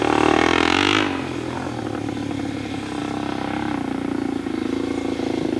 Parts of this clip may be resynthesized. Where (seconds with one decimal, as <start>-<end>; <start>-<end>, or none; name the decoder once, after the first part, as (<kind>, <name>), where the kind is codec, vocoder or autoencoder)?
none